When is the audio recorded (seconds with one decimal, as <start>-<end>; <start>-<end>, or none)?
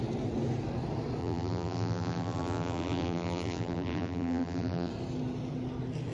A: 0.0-1.2; 4.9-6.1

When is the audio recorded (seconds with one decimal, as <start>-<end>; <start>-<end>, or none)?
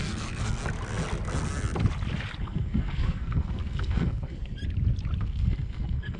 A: 0.6-2.4; 4.6-5.2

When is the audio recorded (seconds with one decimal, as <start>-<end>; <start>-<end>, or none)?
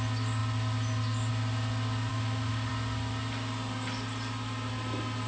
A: 0.0-2.1; 2.7-5.3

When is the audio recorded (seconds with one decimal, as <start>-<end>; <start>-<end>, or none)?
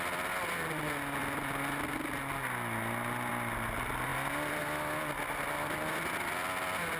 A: 0.0-7.0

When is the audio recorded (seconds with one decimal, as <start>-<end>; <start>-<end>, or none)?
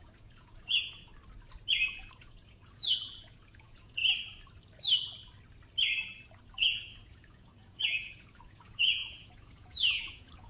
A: 1.1-1.9; 4.0-6.5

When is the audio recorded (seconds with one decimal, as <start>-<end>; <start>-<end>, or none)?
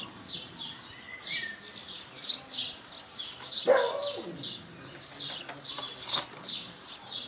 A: 0.0-7.3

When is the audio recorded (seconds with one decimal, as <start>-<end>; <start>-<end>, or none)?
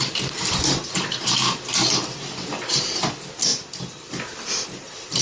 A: 3.5-4.1